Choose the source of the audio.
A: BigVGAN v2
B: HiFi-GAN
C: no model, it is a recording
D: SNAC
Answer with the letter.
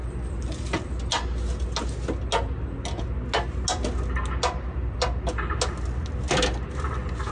C